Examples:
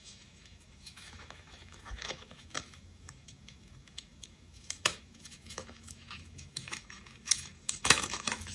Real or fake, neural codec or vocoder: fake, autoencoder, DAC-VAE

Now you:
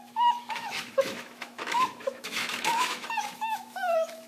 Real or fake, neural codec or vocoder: fake, autoencoder, DAC-VAE